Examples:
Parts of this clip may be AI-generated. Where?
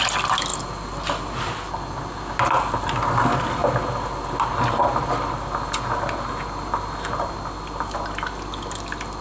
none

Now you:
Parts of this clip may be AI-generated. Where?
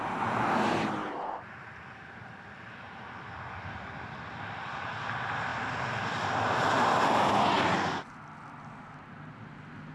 none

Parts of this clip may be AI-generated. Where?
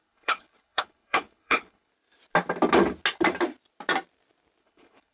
0.0-1.9 (codec, HILCodec); 4.6-5.1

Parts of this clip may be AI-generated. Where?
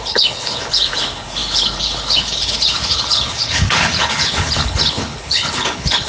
0.0-6.1 (codec, HILCodec)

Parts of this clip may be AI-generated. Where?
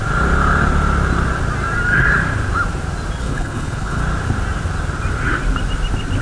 3.2-4.0 (codec, HILCodec)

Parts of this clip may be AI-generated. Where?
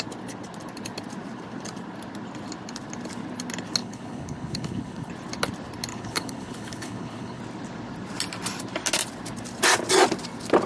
3.8-5.1 (codec, HILCodec); 5.9-7.4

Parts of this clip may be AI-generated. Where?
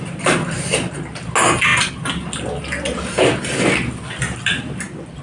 none